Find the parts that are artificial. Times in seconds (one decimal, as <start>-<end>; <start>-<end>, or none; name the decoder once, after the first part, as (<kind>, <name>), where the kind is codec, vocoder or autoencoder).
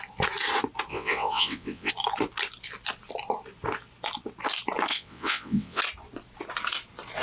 0.9-1.9 (vocoder, WaveNeXt); 4.9-5.8